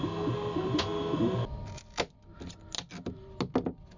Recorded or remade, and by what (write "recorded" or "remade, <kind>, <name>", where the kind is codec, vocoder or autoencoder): recorded